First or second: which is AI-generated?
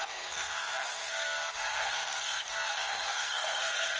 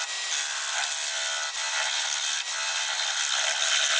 first